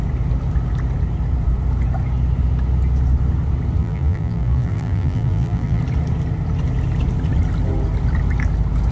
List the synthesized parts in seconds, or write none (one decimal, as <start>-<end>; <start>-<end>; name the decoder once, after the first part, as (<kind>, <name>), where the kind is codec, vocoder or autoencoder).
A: 3.8-5.8 (vocoder, BigVGAN v2)